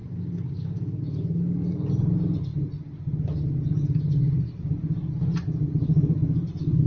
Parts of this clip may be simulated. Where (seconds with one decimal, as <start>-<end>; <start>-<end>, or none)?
0.0-1.0

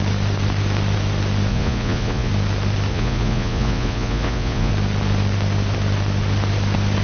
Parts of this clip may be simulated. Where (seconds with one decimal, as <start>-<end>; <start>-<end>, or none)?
1.5-2.3; 2.9-4.7

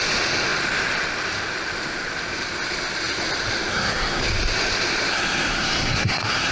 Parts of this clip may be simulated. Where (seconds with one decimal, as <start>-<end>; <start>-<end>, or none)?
3.7-4.2; 5.1-6.5

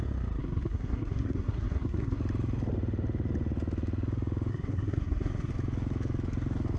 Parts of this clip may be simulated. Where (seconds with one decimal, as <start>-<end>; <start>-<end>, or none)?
0.4-2.2; 4.5-5.5

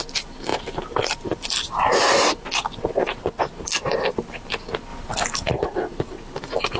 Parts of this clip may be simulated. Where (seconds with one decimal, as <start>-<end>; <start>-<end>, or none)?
none

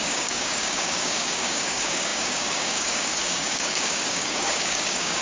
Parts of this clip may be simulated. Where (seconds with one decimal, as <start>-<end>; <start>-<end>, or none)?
0.0-5.2